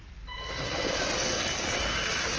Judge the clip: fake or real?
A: real